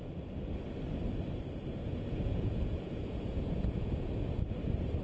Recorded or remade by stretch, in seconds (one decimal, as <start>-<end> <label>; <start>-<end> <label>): 0.0-1.8 recorded; 1.8-4.2 remade; 4.2-5.0 recorded

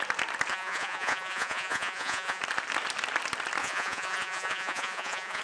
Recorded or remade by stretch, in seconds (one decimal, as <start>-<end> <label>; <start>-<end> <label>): 0.0-0.5 recorded; 0.5-2.4 remade; 2.4-3.6 recorded; 3.6-5.4 remade

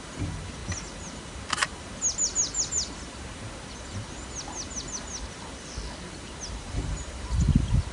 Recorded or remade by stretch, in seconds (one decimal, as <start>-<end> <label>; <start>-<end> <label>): 0.0-7.9 recorded

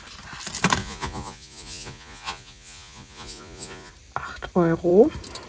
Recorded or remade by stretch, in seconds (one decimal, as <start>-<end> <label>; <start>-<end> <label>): 0.0-0.8 recorded; 0.8-3.9 remade; 3.9-5.5 recorded

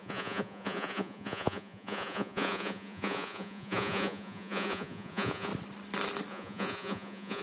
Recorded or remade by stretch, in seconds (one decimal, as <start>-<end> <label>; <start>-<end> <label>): 0.0-5.5 remade; 5.5-6.3 recorded; 6.3-7.4 remade

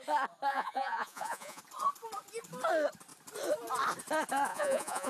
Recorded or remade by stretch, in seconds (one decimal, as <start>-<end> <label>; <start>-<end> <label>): 0.0-0.5 recorded; 0.5-1.6 remade; 1.6-4.5 recorded; 4.5-5.1 remade